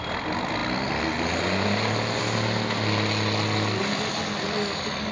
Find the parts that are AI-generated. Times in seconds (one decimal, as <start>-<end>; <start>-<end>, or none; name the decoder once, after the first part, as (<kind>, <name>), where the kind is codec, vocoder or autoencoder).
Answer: none

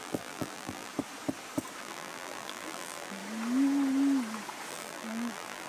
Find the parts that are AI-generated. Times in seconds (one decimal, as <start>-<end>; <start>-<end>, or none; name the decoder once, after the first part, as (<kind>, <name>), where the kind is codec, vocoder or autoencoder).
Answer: 0.0-0.9 (vocoder, BigVGAN v2); 1.8-3.2; 4.7-5.7

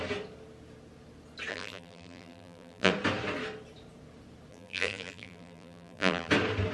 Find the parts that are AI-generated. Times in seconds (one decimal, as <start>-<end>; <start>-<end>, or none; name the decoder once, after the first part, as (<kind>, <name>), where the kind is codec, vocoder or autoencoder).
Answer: 1.5-2.9 (vocoder, BigVGAN v2); 4.5-6.3

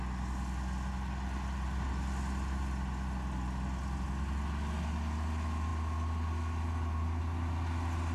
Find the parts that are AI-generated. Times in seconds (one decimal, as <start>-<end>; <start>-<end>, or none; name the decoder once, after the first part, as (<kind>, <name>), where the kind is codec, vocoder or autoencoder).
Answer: none

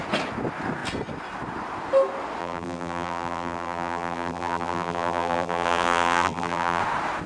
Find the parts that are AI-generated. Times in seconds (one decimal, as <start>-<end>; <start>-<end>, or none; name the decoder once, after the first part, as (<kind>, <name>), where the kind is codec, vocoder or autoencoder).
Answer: 2.4-6.8 (vocoder, BigVGAN v2)

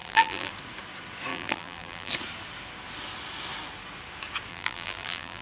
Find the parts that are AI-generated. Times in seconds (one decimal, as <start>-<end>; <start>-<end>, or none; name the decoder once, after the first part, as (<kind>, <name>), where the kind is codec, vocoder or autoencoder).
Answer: 0.0-0.5 (vocoder, BigVGAN v2); 1.3-2.1; 4.5-5.4

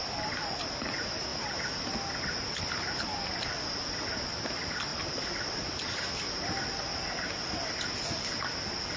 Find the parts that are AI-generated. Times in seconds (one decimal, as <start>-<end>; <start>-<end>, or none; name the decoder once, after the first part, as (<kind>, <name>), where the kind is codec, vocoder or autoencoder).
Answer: none

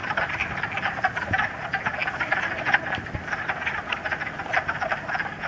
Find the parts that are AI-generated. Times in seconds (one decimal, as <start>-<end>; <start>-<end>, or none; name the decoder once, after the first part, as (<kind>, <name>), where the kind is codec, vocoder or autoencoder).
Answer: 0.0-0.6 (vocoder, BigVGAN v2)